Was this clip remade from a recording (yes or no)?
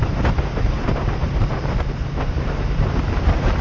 yes